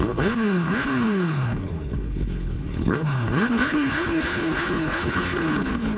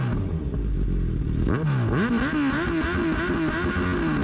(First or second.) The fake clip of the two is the first